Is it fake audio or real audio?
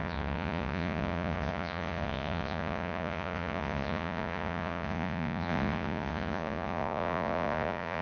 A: fake